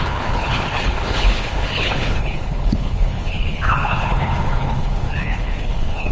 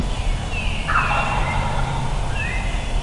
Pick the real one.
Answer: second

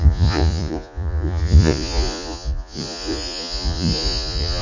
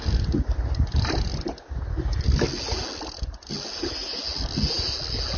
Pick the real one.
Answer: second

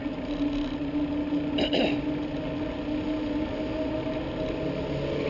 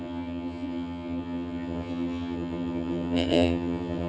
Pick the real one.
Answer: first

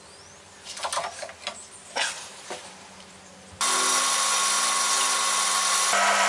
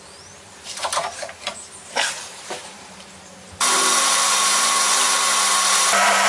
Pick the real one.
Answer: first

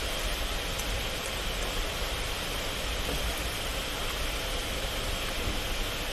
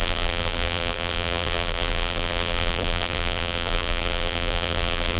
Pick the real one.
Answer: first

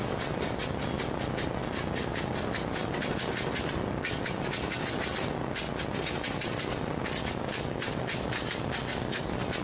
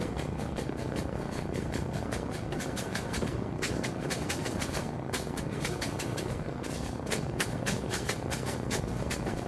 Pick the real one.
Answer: first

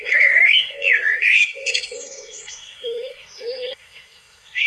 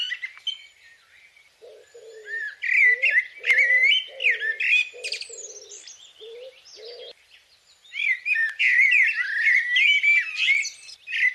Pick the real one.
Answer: second